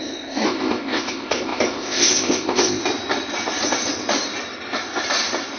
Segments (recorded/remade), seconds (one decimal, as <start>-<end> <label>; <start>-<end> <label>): 0.0-2.8 remade; 2.8-5.6 recorded